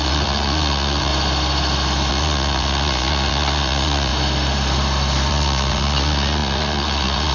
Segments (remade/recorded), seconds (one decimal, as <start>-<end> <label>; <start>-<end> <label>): 0.0-1.1 remade; 1.1-2.1 recorded; 2.1-4.1 remade; 4.1-5.3 recorded; 5.3-7.3 remade